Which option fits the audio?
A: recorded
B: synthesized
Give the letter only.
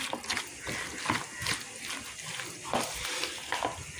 A